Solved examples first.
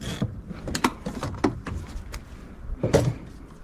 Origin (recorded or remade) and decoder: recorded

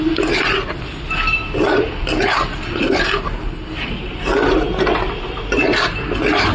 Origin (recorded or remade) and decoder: recorded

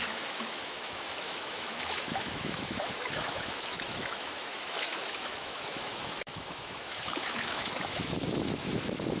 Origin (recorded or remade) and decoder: remade, autoencoder, DAC-VAE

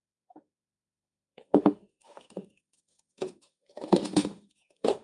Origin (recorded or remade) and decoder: remade, autoencoder, DAC-VAE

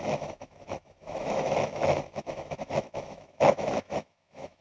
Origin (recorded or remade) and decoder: remade, autoencoder, DAC-VAE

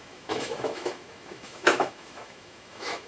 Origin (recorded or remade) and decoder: remade, autoencoder, DAC-VAE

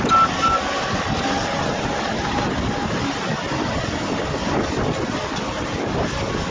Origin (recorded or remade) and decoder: recorded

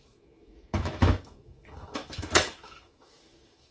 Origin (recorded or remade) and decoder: remade, autoencoder, DAC-VAE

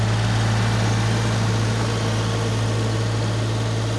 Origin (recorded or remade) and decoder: recorded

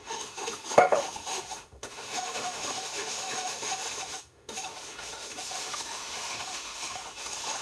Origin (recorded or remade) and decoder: remade, autoencoder, DAC-VAE